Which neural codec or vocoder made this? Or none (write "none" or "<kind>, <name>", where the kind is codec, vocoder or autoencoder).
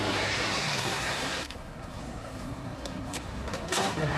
codec, SNAC